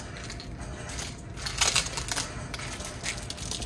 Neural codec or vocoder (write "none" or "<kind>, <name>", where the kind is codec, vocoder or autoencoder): none